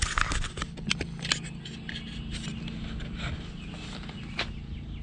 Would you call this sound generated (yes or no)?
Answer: no